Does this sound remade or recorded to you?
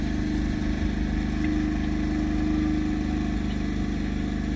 recorded